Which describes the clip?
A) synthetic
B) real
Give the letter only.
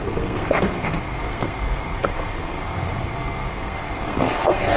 A